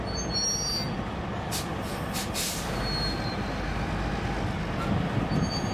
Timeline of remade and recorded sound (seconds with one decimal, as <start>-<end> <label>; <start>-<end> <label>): 0.0-5.7 recorded